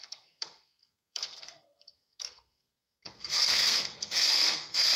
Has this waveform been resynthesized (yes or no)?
yes